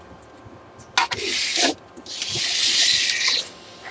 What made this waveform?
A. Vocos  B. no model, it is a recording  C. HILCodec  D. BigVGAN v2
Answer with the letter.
B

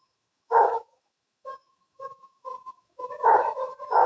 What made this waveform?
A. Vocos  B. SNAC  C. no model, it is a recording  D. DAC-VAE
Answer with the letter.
D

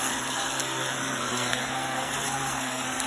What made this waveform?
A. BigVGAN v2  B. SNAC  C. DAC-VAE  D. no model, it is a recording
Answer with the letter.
B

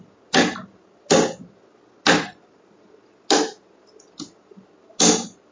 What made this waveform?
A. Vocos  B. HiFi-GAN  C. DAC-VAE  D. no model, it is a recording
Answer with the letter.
D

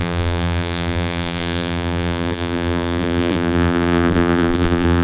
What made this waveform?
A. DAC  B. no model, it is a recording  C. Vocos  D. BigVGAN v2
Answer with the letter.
D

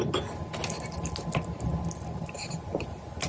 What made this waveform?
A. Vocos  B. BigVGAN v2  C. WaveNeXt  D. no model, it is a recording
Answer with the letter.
D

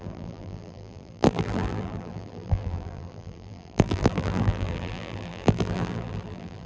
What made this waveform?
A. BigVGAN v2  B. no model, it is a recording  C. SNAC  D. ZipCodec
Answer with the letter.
A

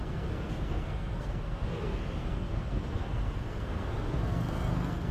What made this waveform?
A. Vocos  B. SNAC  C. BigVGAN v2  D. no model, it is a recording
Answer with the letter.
B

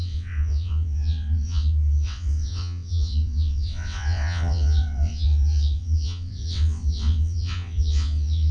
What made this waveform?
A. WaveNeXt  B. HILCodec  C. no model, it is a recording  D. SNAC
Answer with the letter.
A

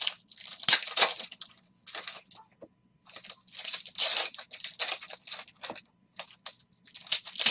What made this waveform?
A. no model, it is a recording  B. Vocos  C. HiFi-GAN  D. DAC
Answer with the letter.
A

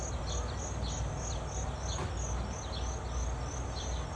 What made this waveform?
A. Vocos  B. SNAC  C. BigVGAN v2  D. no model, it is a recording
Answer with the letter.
D